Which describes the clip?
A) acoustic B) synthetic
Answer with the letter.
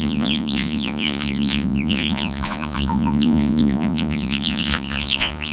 B